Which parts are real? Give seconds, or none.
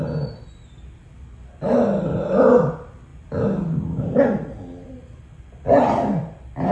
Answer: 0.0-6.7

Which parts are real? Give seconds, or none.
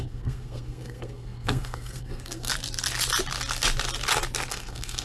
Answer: 2.5-4.5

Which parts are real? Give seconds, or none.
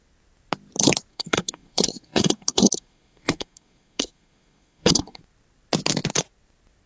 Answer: 0.0-1.1; 5.2-6.9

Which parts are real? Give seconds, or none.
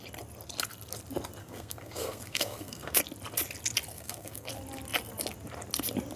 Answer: 0.0-1.4; 3.0-3.9; 4.5-6.2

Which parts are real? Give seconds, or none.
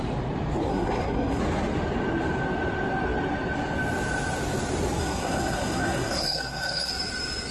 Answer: 0.0-0.7; 1.4-5.0; 6.9-7.5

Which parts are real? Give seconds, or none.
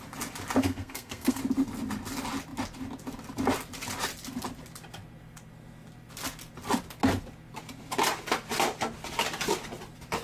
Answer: 0.0-0.6; 1.4-10.2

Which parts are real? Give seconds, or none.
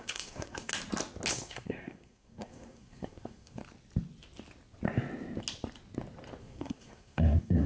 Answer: 0.7-1.3; 3.6-6.4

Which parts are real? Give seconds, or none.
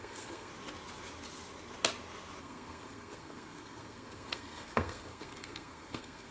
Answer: 0.5-2.4